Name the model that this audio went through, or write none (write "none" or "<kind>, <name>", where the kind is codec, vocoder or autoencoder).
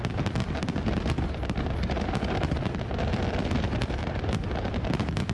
none